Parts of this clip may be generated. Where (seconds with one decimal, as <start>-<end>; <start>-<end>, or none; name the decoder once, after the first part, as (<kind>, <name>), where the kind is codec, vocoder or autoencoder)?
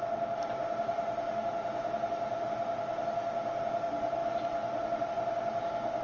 none